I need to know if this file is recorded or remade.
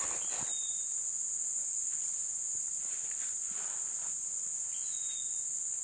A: recorded